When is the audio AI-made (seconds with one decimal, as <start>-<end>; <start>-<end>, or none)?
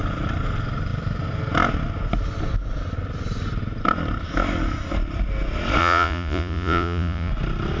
5.8-7.3